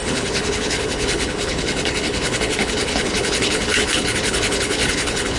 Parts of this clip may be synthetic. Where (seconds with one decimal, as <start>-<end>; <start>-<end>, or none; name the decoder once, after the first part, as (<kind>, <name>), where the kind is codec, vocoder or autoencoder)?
0.0-5.4 (codec, HILCodec)